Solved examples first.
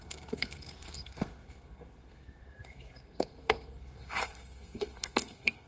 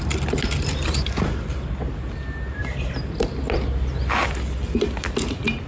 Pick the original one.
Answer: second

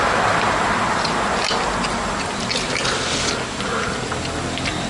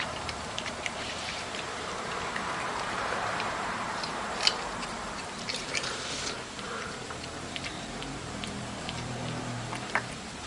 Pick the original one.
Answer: first